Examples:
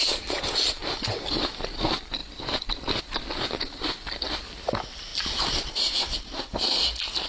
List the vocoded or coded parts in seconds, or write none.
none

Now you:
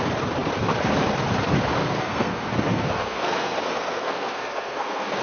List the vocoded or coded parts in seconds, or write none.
1.8-5.2 (codec, SNAC)

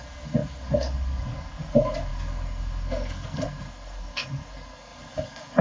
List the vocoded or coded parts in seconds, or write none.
0.0-5.6 (codec, SNAC)

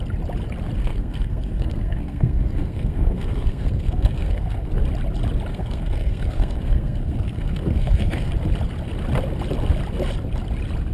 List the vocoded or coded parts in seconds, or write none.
0.8-4.7 (codec, SNAC); 5.5-8.3

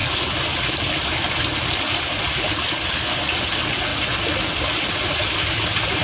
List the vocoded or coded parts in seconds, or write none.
none